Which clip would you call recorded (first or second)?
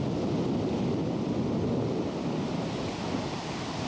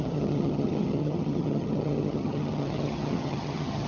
first